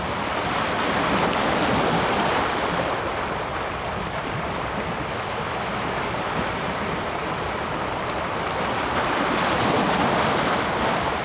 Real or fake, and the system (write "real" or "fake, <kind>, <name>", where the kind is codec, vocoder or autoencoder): real